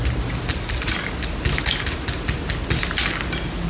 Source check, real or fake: real